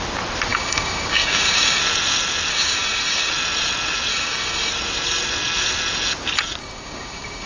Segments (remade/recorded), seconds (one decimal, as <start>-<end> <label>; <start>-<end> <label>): 0.0-0.5 recorded; 0.5-1.8 remade; 1.8-2.5 recorded; 2.5-3.3 remade; 3.3-4.1 recorded; 4.1-4.7 remade; 4.7-6.6 recorded; 6.6-7.5 remade